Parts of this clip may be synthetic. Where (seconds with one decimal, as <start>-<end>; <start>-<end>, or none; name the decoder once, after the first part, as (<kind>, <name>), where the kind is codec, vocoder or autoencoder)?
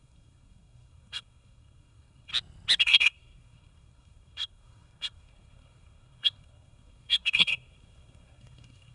0.0-2.3 (codec, SNAC); 2.8-8.9